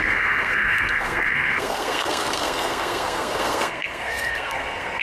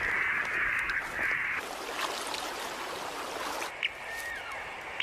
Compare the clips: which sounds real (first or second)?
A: second